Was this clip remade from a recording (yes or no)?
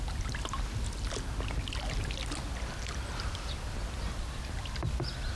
no